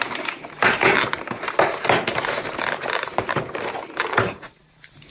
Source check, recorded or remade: remade